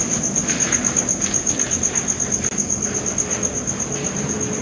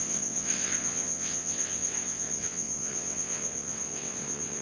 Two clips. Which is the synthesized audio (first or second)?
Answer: second